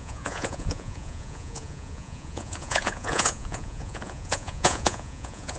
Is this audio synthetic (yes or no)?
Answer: yes